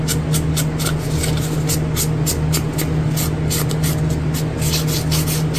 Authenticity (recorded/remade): recorded